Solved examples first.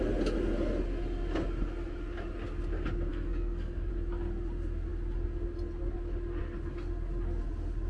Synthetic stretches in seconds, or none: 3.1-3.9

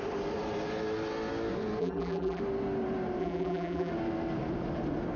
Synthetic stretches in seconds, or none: 1.8-2.4; 3.2-3.9